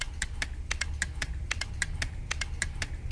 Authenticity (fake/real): real